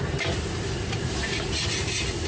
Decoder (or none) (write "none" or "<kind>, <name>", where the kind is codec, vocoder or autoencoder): vocoder, BigVGAN v2